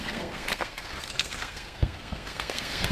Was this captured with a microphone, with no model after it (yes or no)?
no